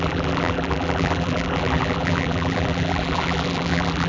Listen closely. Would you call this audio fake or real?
fake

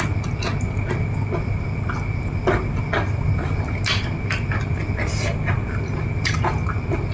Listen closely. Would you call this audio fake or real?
real